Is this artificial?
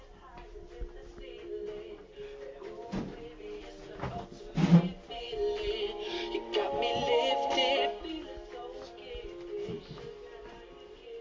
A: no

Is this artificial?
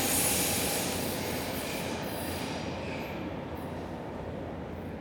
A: no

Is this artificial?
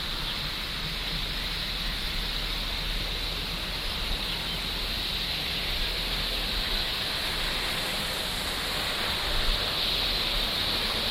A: no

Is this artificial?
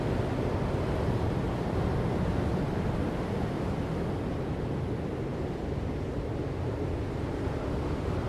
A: no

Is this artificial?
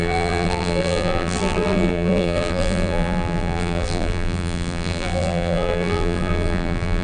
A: yes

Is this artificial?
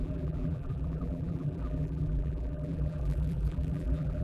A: yes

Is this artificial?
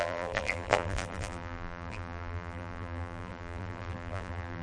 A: yes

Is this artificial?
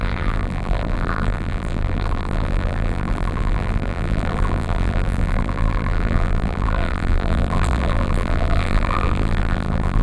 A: yes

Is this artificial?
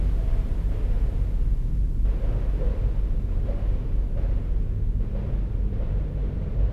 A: no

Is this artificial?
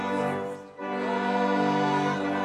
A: no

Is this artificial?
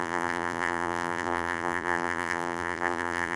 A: yes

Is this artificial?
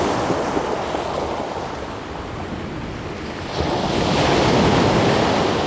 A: no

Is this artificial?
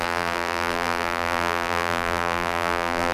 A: yes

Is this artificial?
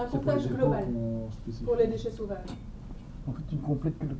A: no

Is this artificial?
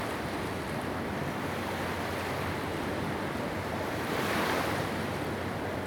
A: yes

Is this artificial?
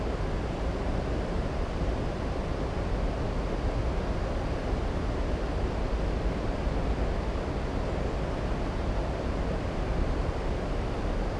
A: no